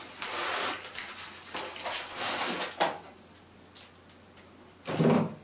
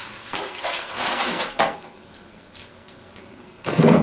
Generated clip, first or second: second